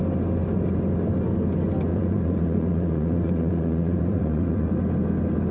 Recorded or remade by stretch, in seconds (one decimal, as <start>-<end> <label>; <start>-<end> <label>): 0.0-1.9 recorded; 1.9-4.7 remade; 4.7-5.5 recorded